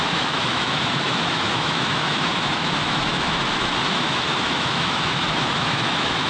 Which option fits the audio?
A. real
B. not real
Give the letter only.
B